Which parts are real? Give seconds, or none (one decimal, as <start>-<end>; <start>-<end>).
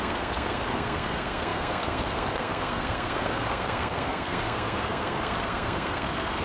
none